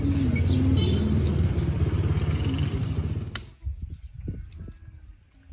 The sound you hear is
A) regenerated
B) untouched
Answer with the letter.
B